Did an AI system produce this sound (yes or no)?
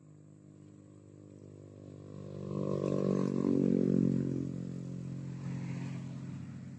no